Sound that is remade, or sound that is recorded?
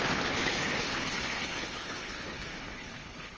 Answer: remade